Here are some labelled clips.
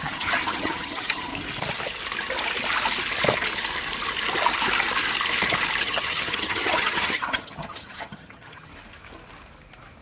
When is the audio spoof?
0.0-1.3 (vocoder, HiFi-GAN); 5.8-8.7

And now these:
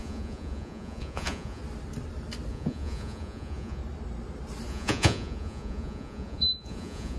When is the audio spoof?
0.0-1.6 (vocoder, Vocos); 2.5-3.8; 4.7-7.2

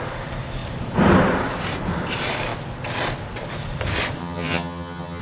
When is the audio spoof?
4.2-5.2 (vocoder, HiFi-GAN)

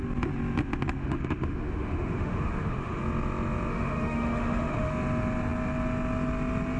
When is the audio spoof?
1.0-3.0 (autoencoder, DAC-VAE); 3.7-4.9

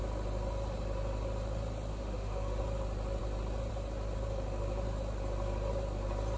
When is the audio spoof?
1.9-2.6 (autoencoder, DAC-VAE)

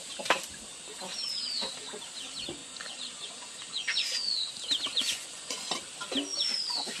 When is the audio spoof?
2.6-4.5 (vocoder, Vocos); 4.9-5.7